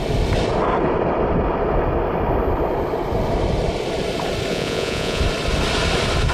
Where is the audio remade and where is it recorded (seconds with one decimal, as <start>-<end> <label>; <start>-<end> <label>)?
0.0-4.5 recorded; 4.5-5.2 remade; 5.2-6.3 recorded